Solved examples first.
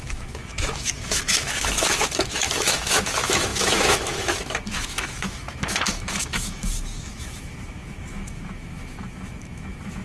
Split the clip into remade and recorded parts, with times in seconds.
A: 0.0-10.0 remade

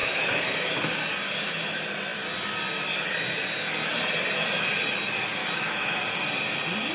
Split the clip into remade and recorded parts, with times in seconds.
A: 0.0-0.7 remade; 0.7-5.4 recorded; 5.4-6.0 remade; 6.0-6.9 recorded

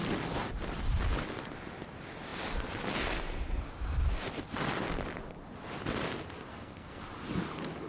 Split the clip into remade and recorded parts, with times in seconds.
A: 0.0-6.5 recorded; 6.5-7.0 remade; 7.0-7.9 recorded

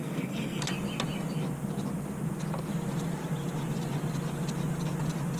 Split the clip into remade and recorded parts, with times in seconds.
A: 0.0-0.6 remade; 0.6-5.4 recorded

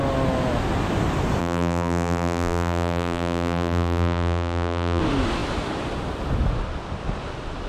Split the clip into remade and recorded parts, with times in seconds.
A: 0.0-1.4 recorded; 1.4-5.0 remade; 5.0-7.7 recorded

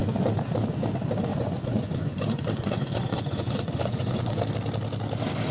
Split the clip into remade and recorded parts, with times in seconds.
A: 0.0-1.3 recorded; 1.3-4.4 remade; 4.4-5.5 recorded